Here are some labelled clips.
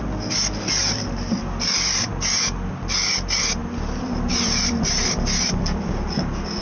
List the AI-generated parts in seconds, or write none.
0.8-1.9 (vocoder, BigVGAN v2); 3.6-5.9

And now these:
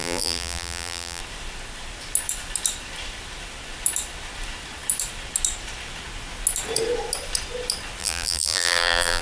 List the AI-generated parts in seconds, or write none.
0.0-1.2 (vocoder, BigVGAN v2); 8.0-9.2

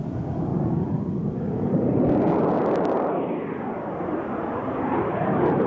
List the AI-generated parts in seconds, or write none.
0.5-3.1 (vocoder, BigVGAN v2)

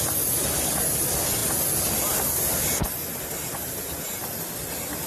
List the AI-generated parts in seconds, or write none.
none

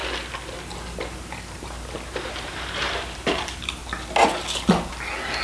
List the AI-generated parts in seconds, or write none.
1.0-3.8 (vocoder, BigVGAN v2)

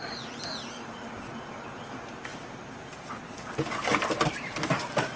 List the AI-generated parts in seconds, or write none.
3.9-4.7 (vocoder, BigVGAN v2)

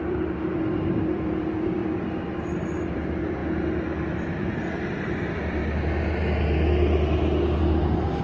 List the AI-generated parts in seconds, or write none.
0.0-3.4 (vocoder, BigVGAN v2); 4.5-5.6; 7.6-8.2